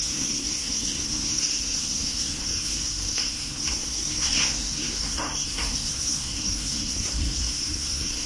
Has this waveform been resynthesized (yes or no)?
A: yes